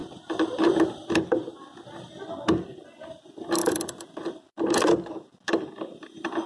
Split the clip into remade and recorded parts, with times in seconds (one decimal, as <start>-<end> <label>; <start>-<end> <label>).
0.0-0.8 remade; 0.8-3.6 recorded; 3.6-5.7 remade; 5.7-6.5 recorded